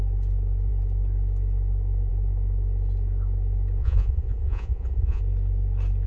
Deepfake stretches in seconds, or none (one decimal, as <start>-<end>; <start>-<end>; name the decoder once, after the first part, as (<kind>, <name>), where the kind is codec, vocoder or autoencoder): 3.8-5.2 (vocoder, Vocos)